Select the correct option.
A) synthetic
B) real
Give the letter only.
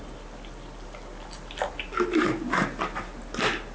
B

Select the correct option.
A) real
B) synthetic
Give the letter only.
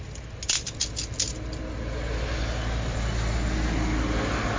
A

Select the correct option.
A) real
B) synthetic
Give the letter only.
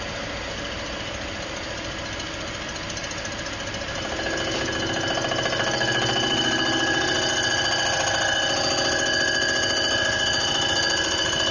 A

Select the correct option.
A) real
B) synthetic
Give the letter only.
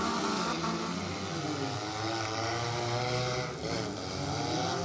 A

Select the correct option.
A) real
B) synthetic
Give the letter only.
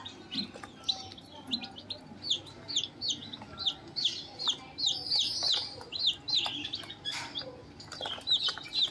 A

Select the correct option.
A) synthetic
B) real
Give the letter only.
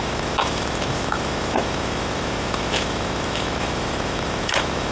A